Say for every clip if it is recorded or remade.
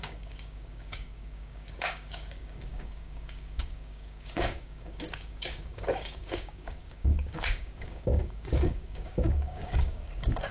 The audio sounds remade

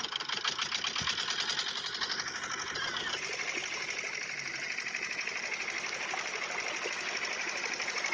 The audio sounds recorded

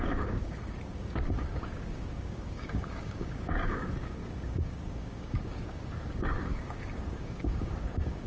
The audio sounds remade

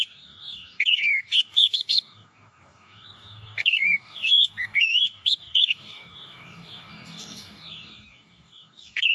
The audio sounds remade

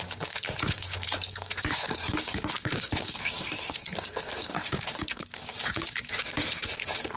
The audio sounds remade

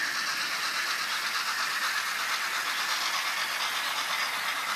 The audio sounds recorded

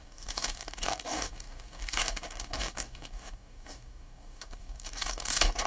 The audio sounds remade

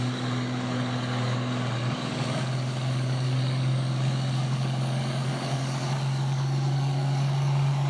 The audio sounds remade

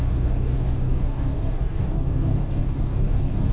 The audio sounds remade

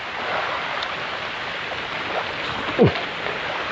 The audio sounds recorded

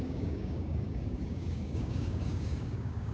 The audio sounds remade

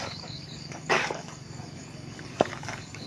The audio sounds remade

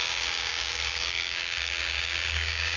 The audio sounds remade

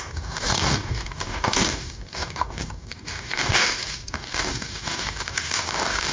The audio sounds remade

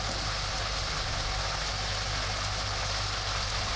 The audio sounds recorded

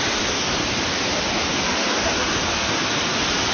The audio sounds recorded